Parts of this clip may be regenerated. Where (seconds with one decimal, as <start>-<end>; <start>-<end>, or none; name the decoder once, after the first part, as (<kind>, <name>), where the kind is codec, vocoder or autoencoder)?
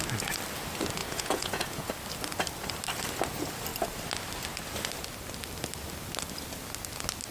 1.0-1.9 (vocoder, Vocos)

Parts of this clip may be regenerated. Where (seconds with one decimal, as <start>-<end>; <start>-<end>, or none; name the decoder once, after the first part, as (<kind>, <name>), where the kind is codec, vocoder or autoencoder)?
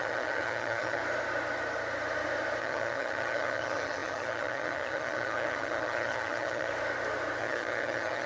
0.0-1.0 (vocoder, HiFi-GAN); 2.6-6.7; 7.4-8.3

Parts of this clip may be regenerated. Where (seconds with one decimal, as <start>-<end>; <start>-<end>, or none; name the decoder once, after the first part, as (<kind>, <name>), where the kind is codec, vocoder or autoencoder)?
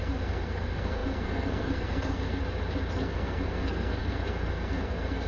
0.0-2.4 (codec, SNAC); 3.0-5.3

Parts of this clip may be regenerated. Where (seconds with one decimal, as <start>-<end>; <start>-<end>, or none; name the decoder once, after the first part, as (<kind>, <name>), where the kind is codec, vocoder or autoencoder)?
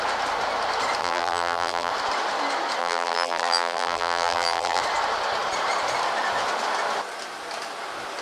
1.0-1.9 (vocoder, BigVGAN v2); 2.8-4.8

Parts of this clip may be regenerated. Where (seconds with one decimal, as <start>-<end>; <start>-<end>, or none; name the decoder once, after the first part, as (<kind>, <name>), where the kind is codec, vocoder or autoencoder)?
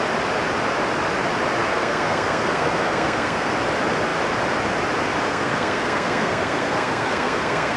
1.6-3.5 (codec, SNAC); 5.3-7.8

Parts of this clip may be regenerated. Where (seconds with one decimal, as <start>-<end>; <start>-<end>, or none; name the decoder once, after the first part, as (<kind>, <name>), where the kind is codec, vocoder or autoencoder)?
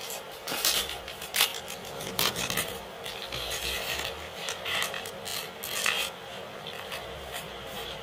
none